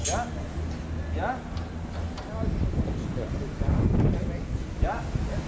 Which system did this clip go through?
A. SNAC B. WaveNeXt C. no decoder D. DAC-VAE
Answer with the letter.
C